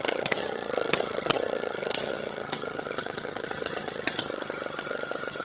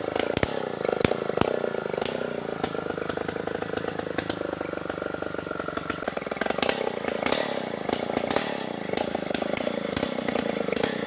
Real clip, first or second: second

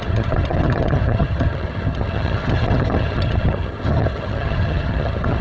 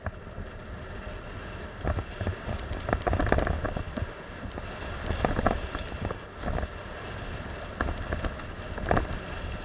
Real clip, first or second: second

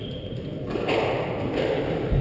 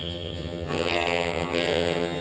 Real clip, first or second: first